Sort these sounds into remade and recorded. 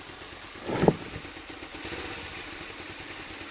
recorded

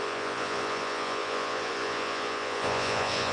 remade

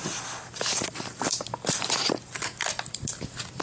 remade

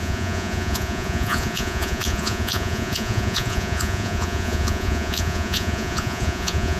remade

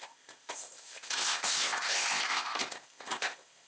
remade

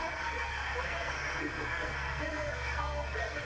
remade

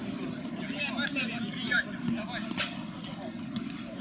recorded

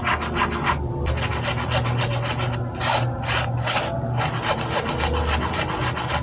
recorded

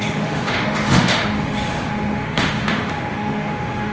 remade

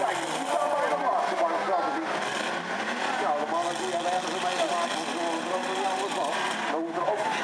recorded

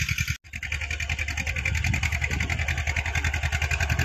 recorded